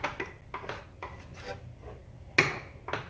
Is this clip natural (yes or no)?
yes